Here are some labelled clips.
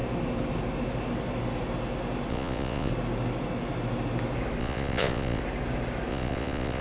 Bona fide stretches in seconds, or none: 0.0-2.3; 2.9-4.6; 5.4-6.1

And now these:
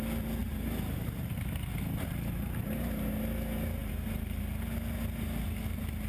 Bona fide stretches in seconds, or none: 0.0-0.4; 1.5-3.8; 4.4-6.1